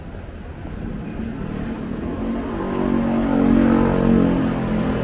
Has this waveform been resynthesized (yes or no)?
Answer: no